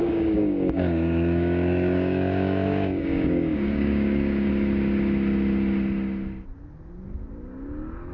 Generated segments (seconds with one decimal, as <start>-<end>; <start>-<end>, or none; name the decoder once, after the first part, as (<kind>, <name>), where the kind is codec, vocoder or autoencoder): 0.0-4.5 (codec, DAC)